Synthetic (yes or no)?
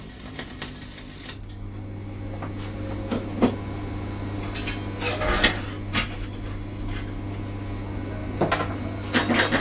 no